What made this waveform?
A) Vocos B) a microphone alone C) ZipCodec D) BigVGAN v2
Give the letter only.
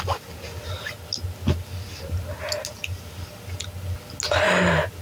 B